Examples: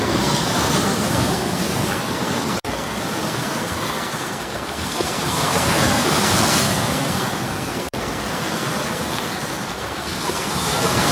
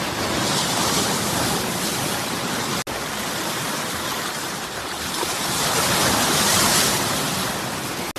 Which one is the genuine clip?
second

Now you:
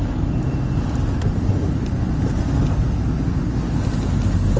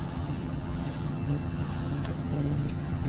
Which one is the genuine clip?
first